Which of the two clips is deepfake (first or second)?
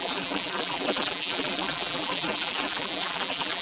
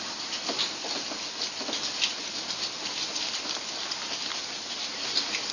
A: first